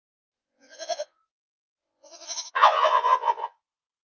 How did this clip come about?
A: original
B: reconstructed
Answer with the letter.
B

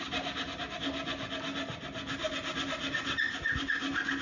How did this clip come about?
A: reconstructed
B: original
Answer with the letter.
B